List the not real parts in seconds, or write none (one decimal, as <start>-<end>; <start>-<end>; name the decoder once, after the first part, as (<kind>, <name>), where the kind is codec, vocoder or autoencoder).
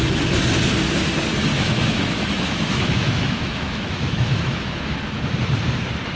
1.5-5.2 (autoencoder, DAC-VAE)